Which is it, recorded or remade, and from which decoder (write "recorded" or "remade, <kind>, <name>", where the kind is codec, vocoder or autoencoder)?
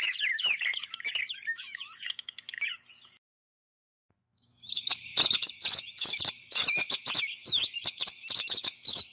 remade, autoencoder, DAC-VAE